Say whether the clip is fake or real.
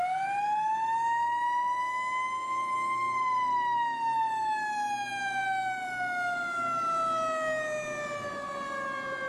real